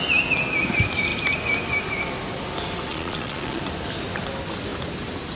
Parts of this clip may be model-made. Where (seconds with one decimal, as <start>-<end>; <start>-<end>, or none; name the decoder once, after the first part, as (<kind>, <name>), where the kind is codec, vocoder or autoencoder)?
2.9-3.6 (vocoder, Vocos)